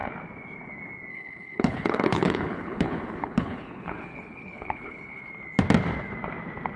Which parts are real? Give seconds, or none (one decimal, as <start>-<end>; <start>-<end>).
0.0-1.1; 5.2-6.8